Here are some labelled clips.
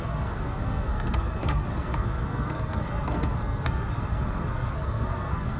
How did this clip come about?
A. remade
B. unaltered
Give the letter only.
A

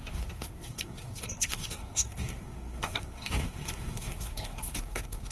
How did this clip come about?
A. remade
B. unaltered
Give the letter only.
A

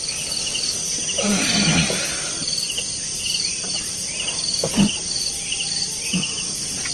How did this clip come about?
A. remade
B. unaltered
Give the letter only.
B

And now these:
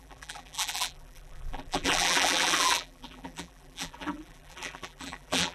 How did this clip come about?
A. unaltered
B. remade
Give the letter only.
B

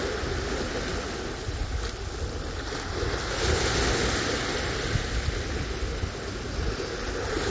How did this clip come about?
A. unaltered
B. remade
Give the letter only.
A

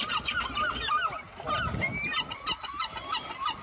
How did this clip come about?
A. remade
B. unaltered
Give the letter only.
B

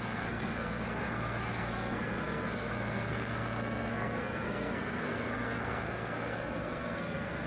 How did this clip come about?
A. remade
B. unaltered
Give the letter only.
A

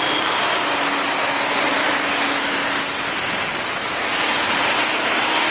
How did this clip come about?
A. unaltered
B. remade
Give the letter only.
A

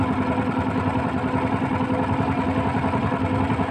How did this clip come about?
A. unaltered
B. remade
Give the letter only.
A